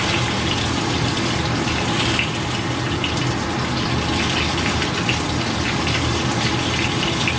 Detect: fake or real real